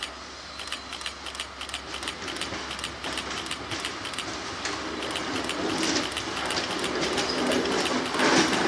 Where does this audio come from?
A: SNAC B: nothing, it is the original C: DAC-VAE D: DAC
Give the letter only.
B